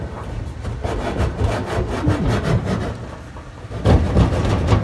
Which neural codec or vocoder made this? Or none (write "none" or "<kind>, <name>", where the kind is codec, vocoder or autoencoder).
none